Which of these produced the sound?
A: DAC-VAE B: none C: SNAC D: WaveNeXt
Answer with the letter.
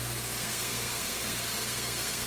C